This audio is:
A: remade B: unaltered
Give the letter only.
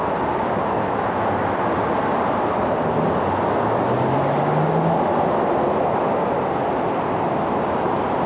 B